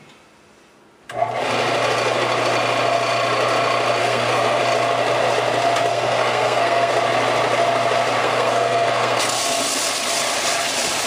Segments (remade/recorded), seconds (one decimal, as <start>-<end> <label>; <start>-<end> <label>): 0.0-4.0 recorded; 4.0-4.6 remade; 4.6-5.9 recorded; 5.9-6.9 remade; 6.9-8.2 recorded; 8.2-9.2 remade; 9.2-11.1 recorded